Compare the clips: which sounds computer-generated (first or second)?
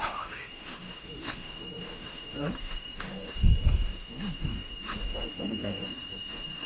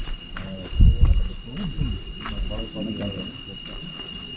first